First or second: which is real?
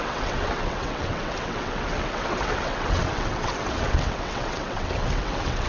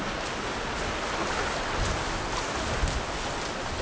second